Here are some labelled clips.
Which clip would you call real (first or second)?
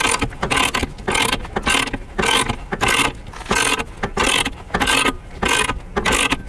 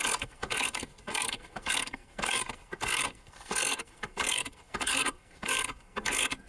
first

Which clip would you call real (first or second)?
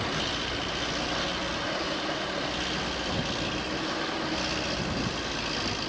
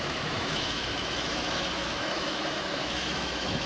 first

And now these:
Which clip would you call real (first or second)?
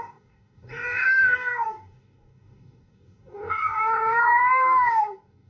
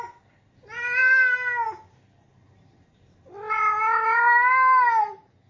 second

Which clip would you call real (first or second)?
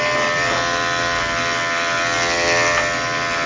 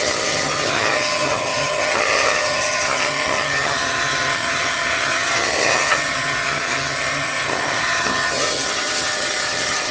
first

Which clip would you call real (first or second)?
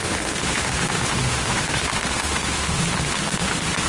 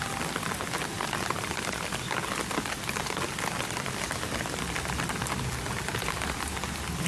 second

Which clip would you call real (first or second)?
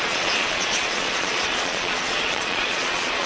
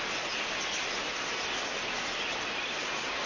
second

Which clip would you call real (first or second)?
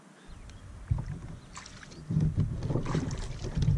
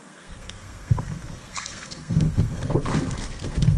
first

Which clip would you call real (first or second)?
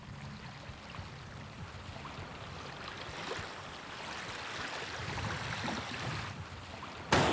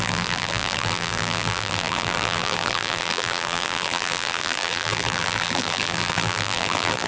first